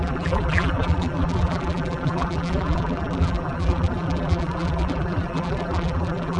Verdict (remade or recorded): remade